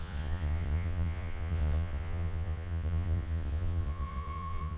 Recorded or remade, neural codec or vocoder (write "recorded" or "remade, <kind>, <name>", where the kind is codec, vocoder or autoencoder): remade, vocoder, Vocos